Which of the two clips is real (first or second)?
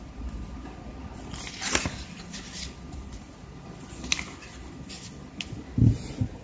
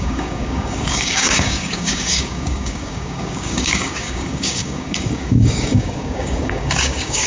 first